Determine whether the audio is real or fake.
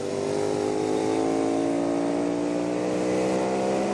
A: real